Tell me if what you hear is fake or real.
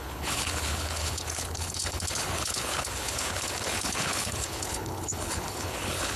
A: fake